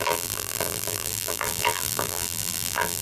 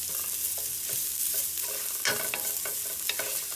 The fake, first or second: first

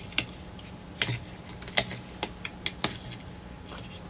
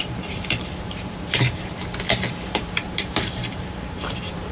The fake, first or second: second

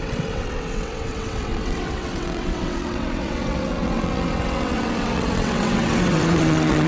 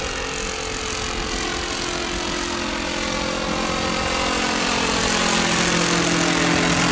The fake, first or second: first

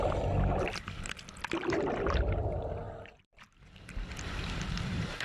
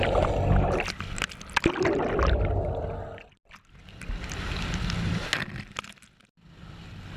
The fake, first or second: first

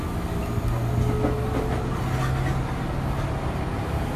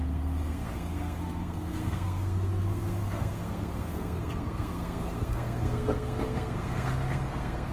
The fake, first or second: second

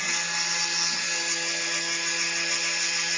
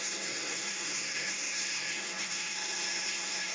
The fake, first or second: second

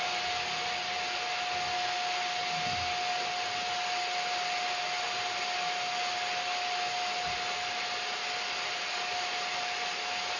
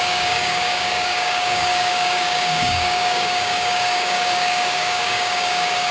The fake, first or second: second